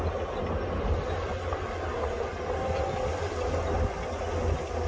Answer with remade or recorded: recorded